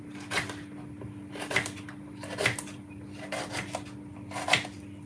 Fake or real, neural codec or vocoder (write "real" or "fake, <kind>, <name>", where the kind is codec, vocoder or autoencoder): real